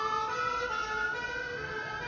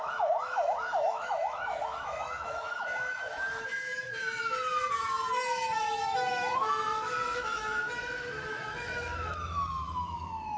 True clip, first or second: first